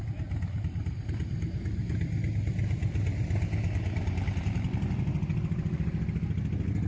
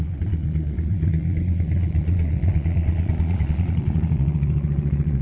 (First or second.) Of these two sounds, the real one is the first